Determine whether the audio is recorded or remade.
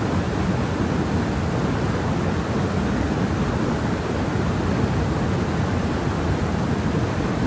recorded